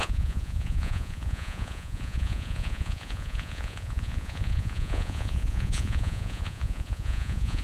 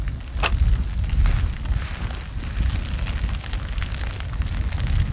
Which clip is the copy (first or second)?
first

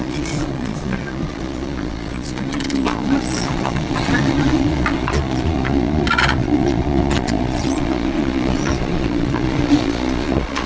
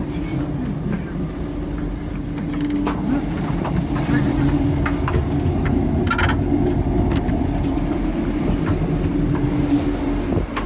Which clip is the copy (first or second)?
first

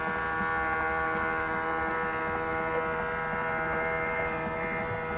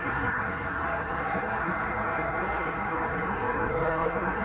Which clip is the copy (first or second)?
second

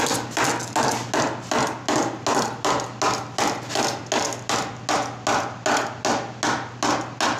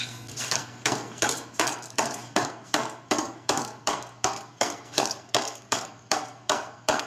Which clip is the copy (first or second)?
second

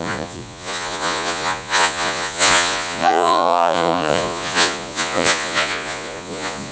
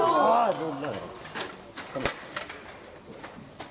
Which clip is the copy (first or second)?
first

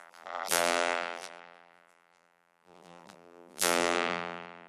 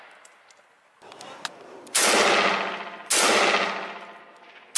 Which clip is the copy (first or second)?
first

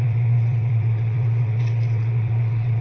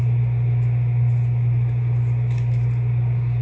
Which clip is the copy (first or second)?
first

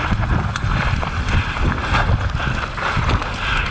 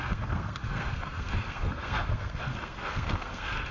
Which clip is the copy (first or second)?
second